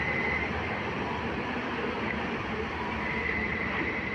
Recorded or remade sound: remade